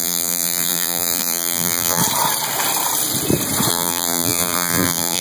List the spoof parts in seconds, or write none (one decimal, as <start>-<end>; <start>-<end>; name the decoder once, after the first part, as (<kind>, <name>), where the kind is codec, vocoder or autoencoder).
0.0-2.0 (vocoder, BigVGAN v2); 3.7-5.2